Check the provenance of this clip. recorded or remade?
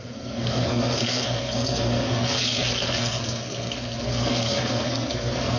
remade